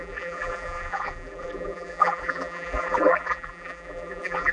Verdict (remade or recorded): remade